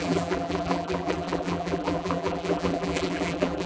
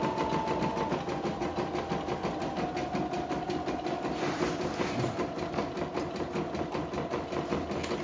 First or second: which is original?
second